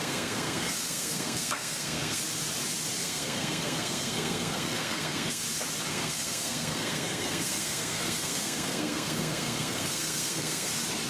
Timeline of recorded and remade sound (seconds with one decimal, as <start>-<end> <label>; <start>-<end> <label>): 0.0-2.2 remade; 2.2-3.0 recorded; 3.0-5.4 remade; 5.4-5.9 recorded; 5.9-10.7 remade; 10.7-11.1 recorded